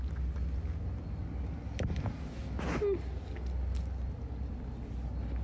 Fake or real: real